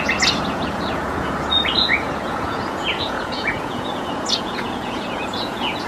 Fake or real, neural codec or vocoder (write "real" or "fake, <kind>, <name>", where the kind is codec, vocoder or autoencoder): fake, vocoder, Vocos